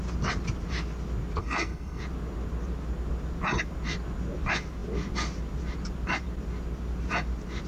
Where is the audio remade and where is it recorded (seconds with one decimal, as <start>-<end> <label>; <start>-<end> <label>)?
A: 0.0-1.4 recorded; 1.4-2.0 remade; 2.0-7.7 recorded